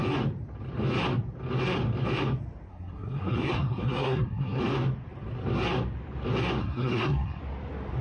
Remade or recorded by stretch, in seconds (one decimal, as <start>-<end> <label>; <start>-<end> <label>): 0.0-2.7 recorded; 2.7-4.6 remade; 4.6-6.6 recorded; 6.6-7.4 remade; 7.4-8.0 recorded